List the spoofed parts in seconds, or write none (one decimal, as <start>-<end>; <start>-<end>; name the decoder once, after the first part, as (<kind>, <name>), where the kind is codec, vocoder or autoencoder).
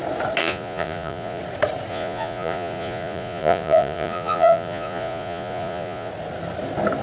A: 0.4-1.4 (vocoder, Vocos); 1.9-6.1